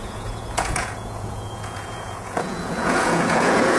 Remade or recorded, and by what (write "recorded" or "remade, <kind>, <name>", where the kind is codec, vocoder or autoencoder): remade, vocoder, Vocos